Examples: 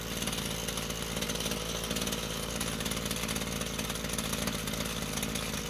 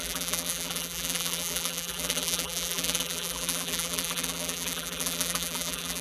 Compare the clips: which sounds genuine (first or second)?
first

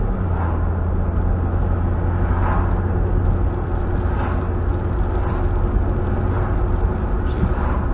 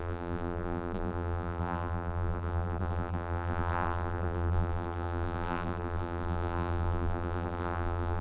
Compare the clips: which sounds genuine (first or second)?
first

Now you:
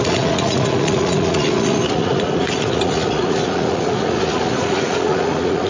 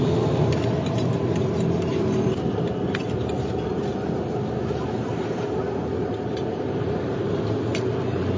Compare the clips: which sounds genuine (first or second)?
second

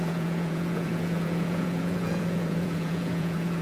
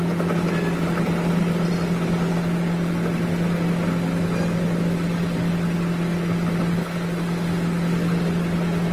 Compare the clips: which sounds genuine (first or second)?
second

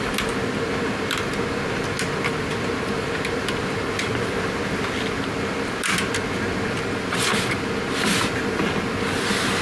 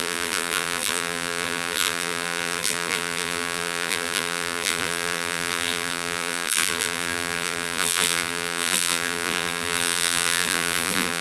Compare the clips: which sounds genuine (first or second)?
first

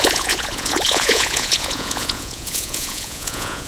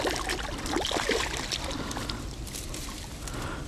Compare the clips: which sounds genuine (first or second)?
second